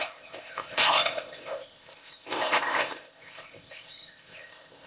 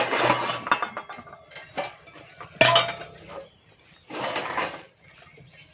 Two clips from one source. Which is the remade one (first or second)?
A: first